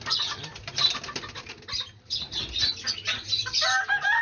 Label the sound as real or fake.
real